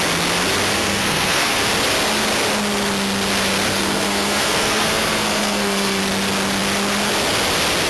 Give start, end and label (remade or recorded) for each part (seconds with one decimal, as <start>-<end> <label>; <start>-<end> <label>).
0.0-0.7 recorded; 0.7-1.6 remade; 1.6-3.7 recorded; 3.7-6.0 remade; 6.0-7.9 recorded